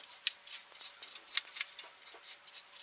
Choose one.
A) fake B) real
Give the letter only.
B